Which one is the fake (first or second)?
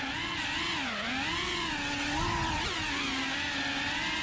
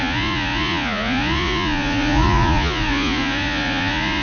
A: second